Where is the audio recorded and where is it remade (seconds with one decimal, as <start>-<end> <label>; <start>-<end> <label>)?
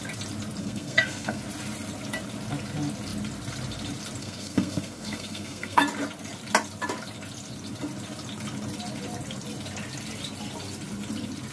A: 0.0-0.6 recorded; 0.6-1.4 remade; 1.4-4.2 recorded; 4.2-5.8 remade; 5.8-11.5 recorded